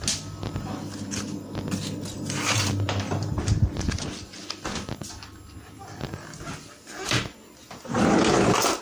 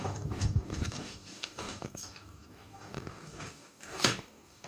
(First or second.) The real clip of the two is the first